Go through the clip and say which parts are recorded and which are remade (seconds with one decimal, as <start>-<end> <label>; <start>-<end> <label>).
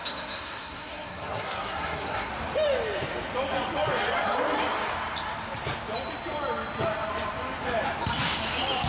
0.0-2.3 remade; 2.3-8.9 recorded